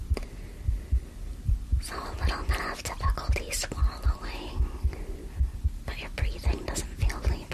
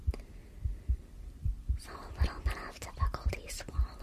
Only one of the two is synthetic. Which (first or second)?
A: second